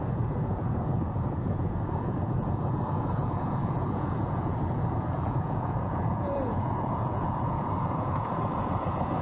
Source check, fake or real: fake